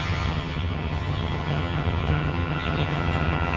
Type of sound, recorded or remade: remade